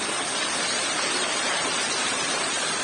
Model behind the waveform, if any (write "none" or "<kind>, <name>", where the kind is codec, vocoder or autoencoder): vocoder, BigVGAN v2